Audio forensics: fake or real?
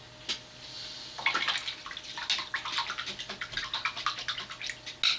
real